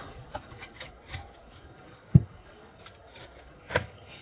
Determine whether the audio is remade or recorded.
remade